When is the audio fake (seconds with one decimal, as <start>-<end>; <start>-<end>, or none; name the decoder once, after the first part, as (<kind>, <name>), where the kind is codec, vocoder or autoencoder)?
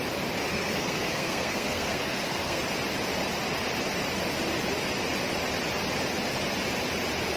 0.5-2.6 (codec, SNAC)